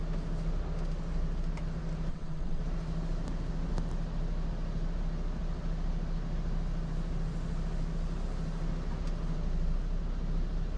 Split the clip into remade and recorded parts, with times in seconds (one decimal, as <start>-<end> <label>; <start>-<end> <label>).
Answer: 0.0-2.1 recorded; 2.1-2.6 remade; 2.6-10.8 recorded